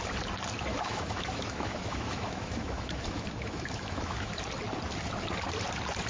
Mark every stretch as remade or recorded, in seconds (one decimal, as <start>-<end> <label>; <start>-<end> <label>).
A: 0.0-0.7 recorded; 0.7-4.4 remade; 4.4-6.1 recorded